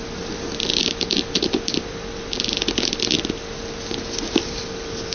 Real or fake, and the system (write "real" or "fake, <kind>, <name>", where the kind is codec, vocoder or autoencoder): real